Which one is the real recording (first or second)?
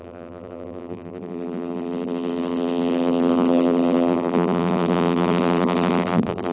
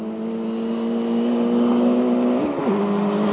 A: second